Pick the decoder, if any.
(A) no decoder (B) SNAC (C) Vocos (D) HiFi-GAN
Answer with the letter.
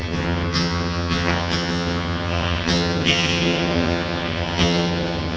D